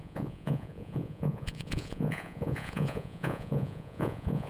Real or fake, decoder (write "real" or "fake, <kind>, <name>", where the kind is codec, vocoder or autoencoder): fake, vocoder, Vocos